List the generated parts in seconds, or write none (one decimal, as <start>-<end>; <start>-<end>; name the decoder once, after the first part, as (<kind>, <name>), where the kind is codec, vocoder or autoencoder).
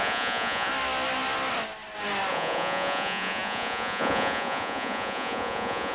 0.0-0.7 (vocoder, Vocos); 2.3-5.9